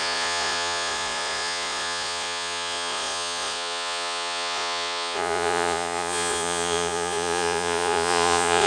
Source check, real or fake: fake